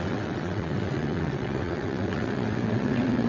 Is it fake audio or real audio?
fake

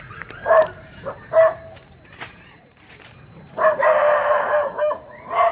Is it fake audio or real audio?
fake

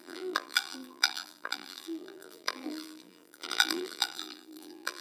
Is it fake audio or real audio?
fake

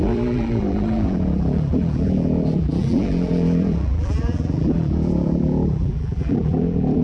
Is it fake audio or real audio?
fake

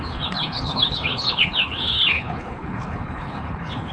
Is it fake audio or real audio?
fake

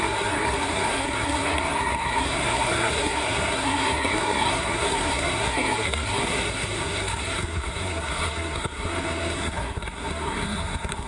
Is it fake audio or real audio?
fake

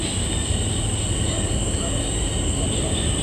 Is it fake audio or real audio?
real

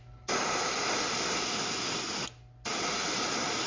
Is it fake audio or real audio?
real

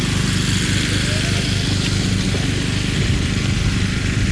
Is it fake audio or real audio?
real